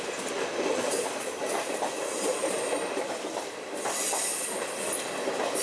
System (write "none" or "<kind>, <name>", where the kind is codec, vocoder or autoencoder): none